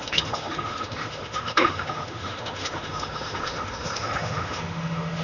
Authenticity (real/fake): fake